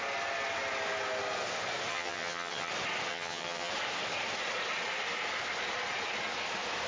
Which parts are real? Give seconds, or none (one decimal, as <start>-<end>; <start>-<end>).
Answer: 0.0-1.9; 2.7-3.1; 3.7-6.9